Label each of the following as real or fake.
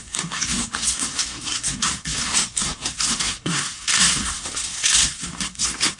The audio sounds fake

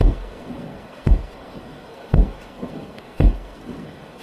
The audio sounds fake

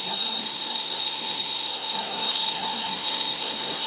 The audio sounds fake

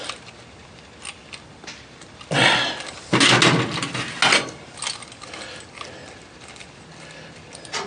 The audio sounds real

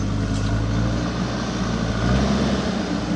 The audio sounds real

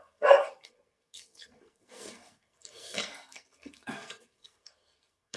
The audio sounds fake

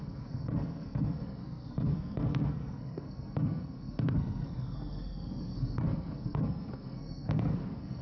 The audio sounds fake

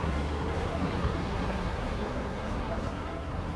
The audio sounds fake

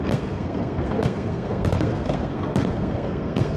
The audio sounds fake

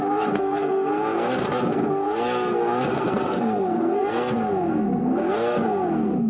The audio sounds fake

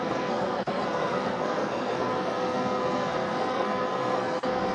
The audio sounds fake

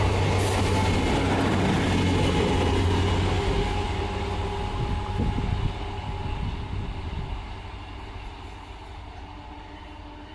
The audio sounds real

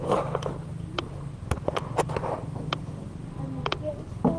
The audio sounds real